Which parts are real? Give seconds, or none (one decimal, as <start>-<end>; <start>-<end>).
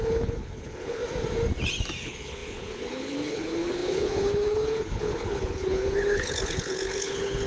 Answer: 1.0-2.0